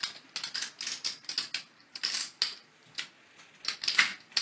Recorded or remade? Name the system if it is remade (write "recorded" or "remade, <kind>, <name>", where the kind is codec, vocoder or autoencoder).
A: recorded